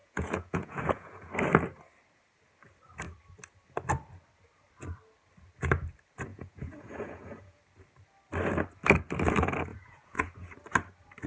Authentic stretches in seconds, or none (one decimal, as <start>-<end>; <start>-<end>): 1.3-6.3; 7.6-9.7; 10.3-11.3